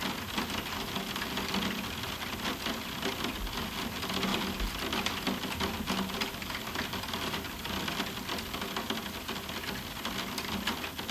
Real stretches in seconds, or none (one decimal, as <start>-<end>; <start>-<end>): 0.0-11.1